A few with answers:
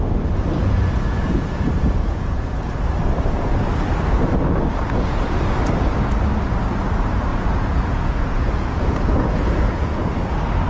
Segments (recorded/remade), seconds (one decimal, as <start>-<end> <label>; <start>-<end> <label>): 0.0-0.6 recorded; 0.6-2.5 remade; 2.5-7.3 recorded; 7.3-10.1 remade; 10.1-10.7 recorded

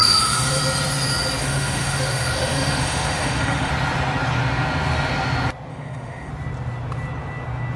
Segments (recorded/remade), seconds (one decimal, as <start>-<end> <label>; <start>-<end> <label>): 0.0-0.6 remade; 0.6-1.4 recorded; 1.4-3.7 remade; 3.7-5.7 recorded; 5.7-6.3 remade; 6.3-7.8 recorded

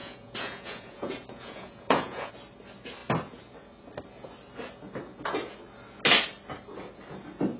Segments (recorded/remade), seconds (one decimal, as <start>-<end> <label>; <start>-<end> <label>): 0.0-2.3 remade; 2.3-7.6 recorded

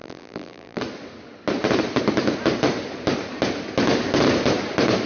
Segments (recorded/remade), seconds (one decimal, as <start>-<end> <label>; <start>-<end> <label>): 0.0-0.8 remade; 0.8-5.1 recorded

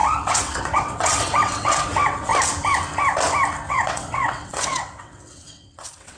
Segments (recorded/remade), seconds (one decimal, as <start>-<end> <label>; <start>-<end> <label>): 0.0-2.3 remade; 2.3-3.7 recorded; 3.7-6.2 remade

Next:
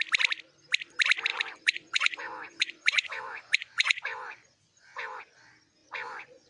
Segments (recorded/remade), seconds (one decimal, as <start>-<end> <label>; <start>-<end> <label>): 0.0-1.3 recorded; 1.3-5.2 remade; 5.2-5.8 recorded; 5.8-6.5 remade